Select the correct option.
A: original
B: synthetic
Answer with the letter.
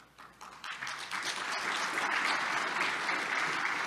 A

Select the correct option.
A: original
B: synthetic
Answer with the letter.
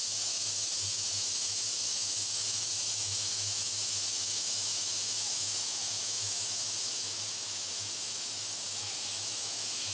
B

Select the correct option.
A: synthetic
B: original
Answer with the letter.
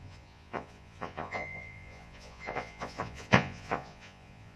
A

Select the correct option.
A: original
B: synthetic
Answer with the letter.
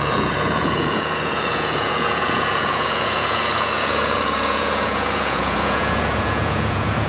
B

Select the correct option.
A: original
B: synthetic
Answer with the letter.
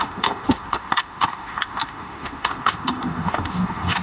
B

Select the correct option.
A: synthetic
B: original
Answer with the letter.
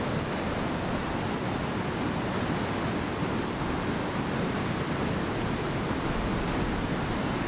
B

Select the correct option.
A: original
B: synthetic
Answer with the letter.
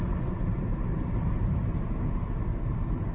A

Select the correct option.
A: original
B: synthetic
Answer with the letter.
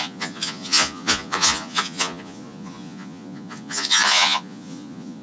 B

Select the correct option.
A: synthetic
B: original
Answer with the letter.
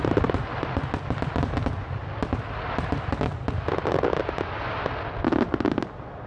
B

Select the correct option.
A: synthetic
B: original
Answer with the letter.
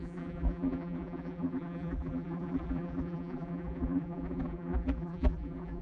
A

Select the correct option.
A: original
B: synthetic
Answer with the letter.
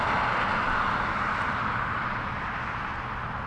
A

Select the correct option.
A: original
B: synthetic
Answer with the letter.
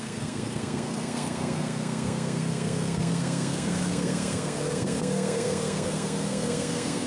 B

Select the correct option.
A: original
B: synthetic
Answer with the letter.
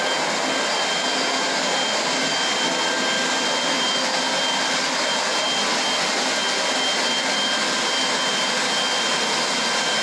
A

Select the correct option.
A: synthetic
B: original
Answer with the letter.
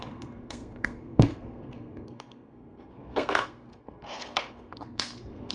A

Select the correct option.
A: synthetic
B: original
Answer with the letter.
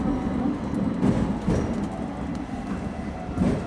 B